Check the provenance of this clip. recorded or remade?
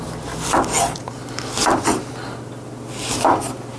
recorded